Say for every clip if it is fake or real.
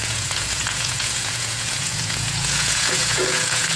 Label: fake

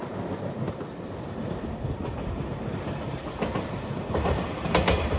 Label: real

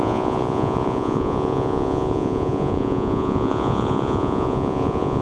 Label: fake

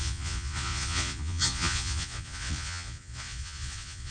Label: fake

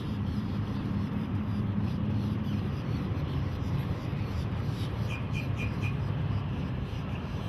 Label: fake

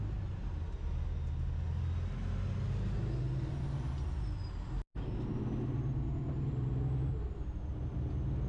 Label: real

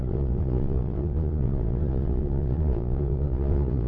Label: fake